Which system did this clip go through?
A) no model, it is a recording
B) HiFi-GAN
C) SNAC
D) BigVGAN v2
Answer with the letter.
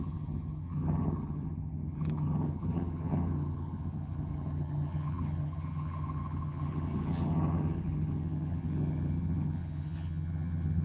B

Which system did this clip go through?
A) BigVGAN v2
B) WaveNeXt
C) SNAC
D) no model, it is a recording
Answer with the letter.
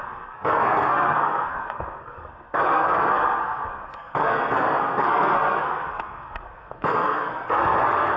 C